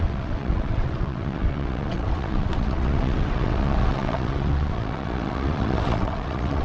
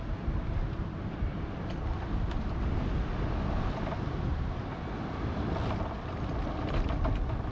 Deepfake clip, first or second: first